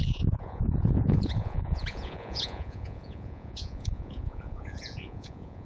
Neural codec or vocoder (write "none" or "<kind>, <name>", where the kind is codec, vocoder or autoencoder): vocoder, Vocos